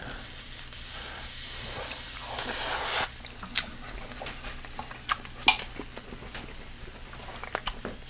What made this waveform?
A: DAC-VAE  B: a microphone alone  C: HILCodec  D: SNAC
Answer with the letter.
B